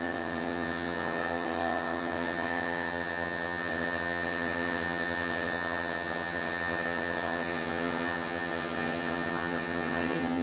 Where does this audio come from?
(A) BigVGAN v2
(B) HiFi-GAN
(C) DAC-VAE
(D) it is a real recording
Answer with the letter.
B